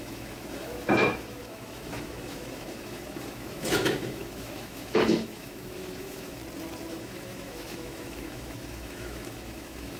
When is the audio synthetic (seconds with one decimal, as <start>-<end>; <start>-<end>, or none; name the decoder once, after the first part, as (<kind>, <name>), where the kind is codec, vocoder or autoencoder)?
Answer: 0.0-6.4 (autoencoder, DAC-VAE); 6.9-10.0